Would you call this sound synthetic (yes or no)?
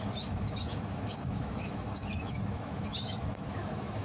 yes